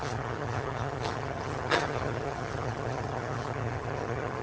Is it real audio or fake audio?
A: fake